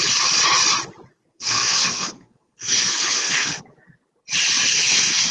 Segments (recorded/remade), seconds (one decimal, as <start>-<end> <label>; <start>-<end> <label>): 0.0-1.3 recorded; 1.3-3.6 remade; 3.6-4.7 recorded; 4.7-5.3 remade